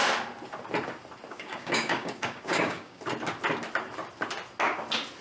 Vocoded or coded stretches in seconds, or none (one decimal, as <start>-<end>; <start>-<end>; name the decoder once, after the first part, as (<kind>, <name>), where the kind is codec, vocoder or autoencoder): 1.3-3.0 (codec, DAC)